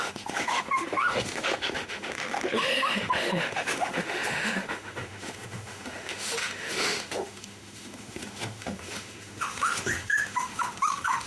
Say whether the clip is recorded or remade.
remade